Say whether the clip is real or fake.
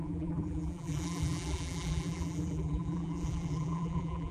fake